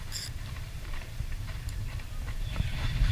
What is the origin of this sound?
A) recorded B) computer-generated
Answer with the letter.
B